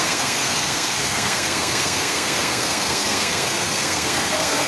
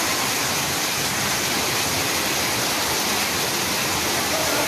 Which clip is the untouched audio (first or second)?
second